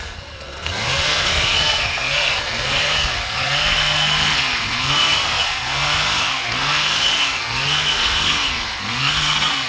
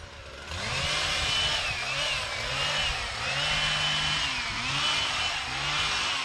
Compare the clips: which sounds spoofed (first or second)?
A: first